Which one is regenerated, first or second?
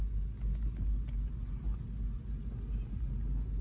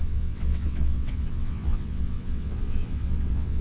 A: second